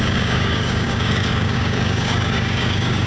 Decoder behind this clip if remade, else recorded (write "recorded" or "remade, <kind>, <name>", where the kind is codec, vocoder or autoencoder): remade, codec, DAC